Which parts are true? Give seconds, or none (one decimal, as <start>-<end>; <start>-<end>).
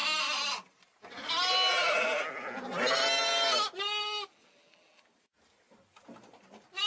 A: 0.0-6.9